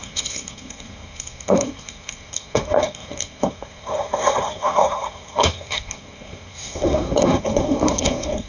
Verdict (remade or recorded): remade